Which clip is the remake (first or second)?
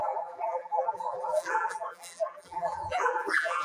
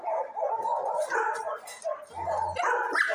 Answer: first